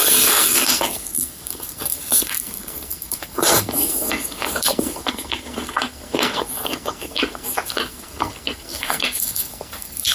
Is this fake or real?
fake